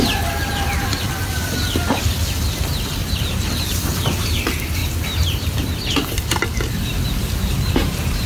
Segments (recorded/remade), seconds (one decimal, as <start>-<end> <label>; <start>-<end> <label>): 0.0-3.0 recorded; 3.0-4.2 remade; 4.2-4.8 recorded; 4.8-8.3 remade